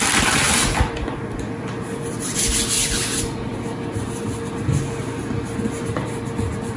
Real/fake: real